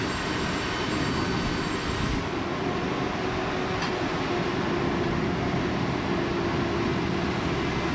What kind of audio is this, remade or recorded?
recorded